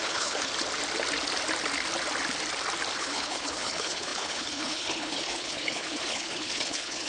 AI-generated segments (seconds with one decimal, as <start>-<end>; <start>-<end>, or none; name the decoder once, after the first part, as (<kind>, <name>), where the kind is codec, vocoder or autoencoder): 0.0-0.5 (codec, HILCodec); 3.0-7.1